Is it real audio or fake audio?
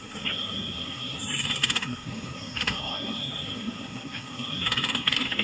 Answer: fake